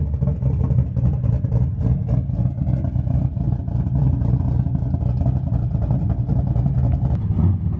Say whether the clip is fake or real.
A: real